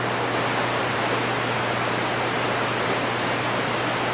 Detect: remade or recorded recorded